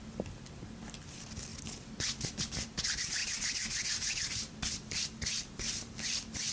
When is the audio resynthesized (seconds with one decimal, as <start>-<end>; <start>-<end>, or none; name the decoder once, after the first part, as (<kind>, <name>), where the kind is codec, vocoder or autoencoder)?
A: 0.0-1.5 (vocoder, BigVGAN v2); 2.3-6.5